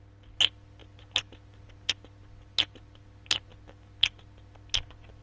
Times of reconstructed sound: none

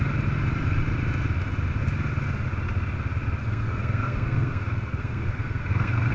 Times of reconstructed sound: 3.4-6.1 (codec, SNAC)

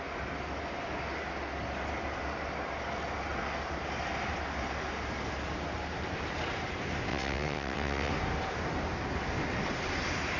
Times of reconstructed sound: 7.1-8.1 (vocoder, WaveNeXt)

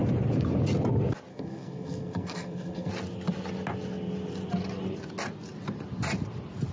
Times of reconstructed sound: 1.3-2.9 (codec, SNAC)